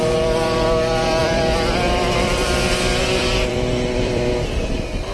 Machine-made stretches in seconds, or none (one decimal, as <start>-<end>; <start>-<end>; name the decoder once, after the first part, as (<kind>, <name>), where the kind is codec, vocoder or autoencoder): 1.2-4.3 (vocoder, BigVGAN v2)